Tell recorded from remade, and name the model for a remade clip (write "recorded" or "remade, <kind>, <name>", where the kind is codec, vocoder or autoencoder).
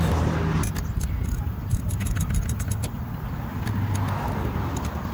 recorded